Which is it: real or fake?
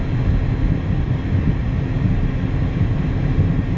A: real